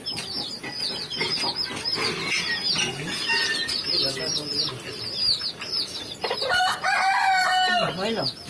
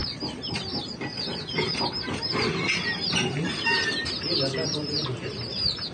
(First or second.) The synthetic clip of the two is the second